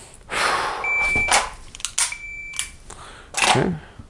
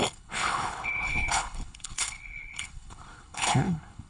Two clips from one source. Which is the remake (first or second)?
second